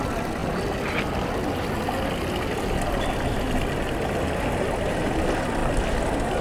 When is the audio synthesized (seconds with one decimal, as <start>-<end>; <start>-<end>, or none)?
none